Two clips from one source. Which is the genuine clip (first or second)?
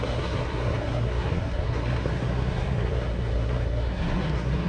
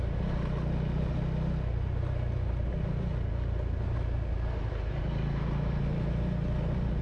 second